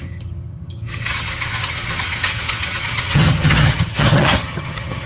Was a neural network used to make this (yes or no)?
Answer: yes